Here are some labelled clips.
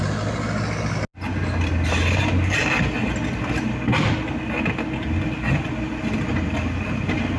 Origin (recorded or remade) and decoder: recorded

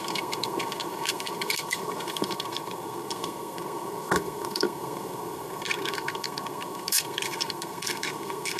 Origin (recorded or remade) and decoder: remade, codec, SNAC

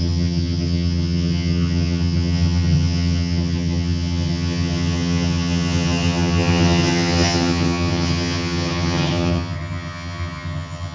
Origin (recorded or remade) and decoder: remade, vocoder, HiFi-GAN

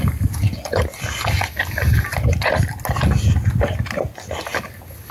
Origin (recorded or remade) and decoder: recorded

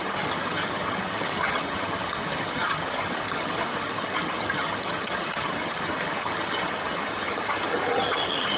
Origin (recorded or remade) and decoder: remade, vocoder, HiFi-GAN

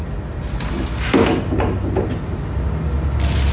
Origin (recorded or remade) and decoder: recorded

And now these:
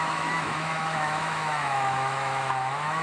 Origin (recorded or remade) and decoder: remade, autoencoder, DAC-VAE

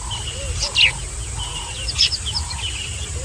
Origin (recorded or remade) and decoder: recorded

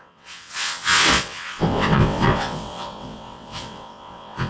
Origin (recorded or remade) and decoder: remade, vocoder, WaveNeXt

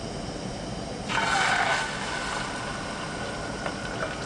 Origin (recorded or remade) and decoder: recorded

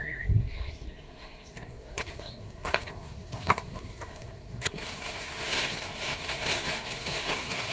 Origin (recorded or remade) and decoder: remade, codec, SNAC